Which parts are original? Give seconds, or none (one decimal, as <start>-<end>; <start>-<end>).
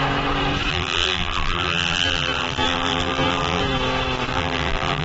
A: 0.0-0.7; 3.6-4.3